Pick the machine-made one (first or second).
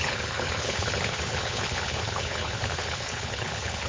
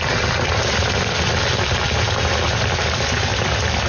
first